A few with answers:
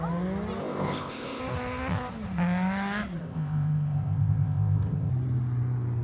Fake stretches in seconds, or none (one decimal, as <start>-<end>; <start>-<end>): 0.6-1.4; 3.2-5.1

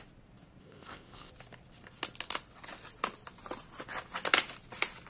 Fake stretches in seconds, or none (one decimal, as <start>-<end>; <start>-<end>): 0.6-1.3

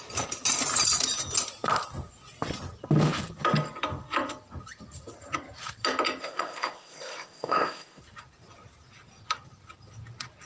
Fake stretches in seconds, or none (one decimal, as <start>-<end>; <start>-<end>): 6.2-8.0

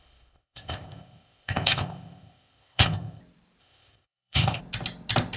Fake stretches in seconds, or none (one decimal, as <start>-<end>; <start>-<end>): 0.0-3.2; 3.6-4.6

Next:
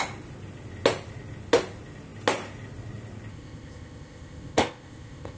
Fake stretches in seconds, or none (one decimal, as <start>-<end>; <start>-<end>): 3.3-5.4